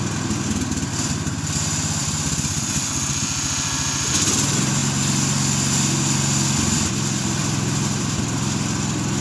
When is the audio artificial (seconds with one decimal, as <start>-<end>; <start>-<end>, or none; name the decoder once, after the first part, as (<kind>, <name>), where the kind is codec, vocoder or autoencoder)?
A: none